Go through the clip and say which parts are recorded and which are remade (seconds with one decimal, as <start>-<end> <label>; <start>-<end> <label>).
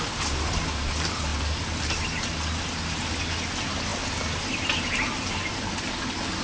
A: 0.0-6.4 recorded